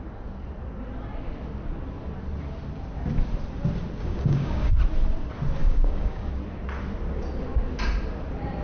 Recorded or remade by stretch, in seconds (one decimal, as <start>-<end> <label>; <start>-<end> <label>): 0.0-4.0 recorded; 4.0-4.7 remade; 4.7-5.6 recorded; 5.6-6.3 remade; 6.3-8.6 recorded